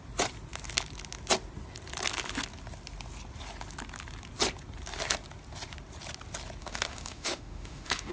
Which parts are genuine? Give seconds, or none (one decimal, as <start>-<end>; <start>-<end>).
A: 0.0-6.6